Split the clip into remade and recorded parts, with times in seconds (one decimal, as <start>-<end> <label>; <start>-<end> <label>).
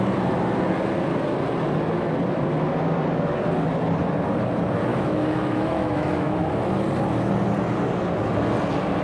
0.0-4.9 recorded; 4.9-6.5 remade; 6.5-9.0 recorded